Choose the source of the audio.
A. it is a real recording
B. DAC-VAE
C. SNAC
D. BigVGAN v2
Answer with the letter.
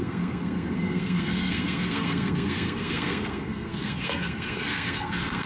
C